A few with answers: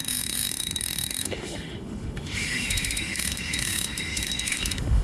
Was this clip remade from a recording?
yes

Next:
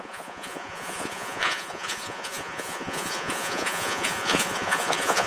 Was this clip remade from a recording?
yes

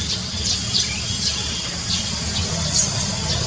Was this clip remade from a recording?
no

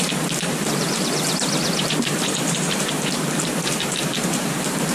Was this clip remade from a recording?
yes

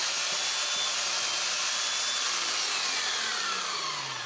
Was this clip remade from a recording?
no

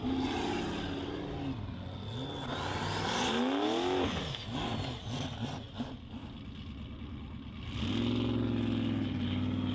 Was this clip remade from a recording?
no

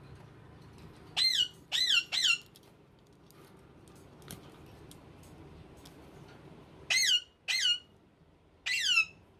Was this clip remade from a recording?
no